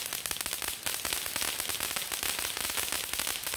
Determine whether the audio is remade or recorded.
recorded